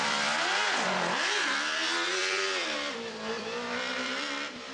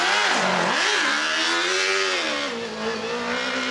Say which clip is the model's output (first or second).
first